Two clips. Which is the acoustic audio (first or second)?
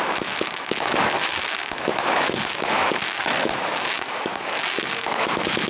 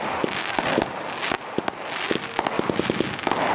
second